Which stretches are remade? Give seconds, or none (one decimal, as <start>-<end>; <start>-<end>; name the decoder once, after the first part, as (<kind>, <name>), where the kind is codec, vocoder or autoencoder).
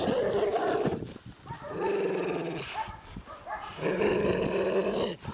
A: 3.5-4.5 (vocoder, BigVGAN v2)